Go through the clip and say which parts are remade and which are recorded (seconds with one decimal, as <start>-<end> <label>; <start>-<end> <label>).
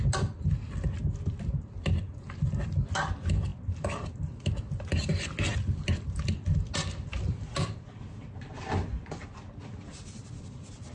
0.0-10.9 recorded